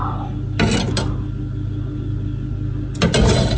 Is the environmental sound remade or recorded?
recorded